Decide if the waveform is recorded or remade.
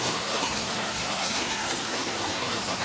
remade